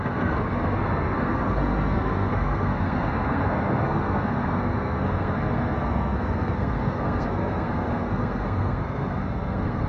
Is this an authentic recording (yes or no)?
no